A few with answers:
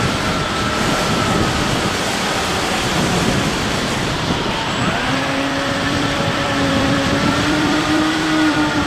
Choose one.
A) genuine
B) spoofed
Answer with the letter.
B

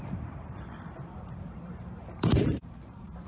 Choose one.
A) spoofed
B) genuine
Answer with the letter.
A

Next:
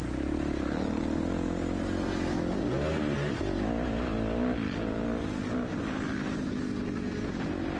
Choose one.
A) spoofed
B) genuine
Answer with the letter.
B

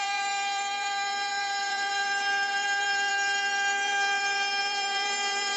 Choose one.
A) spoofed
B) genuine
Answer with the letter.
A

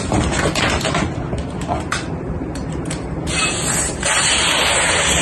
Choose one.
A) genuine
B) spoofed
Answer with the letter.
B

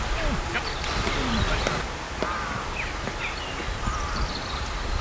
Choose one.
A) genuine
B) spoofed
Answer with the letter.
A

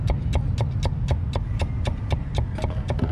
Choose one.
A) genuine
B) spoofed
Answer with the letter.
A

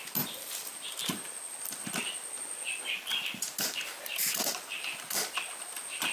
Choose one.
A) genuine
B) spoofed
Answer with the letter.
A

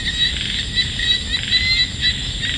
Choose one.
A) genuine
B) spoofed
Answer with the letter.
A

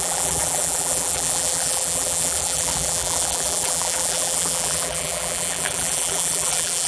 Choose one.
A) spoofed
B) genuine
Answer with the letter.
A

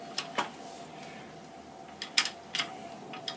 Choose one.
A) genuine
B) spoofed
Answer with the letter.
A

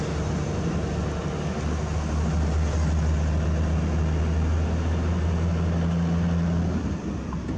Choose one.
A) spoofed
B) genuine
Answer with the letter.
B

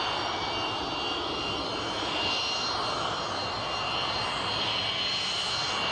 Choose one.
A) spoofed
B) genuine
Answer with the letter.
A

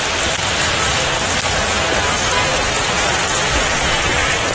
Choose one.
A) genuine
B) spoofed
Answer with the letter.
A